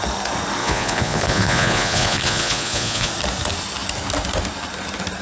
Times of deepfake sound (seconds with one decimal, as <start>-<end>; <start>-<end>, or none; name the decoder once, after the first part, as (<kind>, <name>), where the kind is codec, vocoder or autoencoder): 0.6-3.1 (vocoder, Vocos)